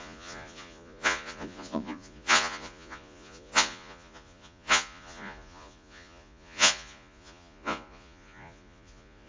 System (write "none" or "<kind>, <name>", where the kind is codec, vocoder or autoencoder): vocoder, Vocos